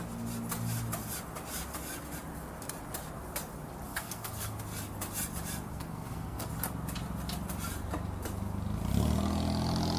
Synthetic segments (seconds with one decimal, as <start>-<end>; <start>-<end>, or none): 3.9-4.6; 5.7-6.5